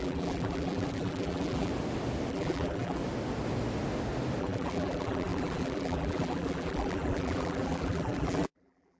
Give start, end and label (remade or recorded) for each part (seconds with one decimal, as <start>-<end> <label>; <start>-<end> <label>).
0.0-1.7 remade; 1.7-2.3 recorded; 2.3-3.0 remade; 3.0-4.4 recorded; 4.4-9.0 remade